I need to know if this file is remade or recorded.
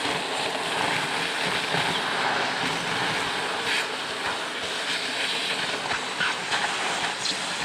recorded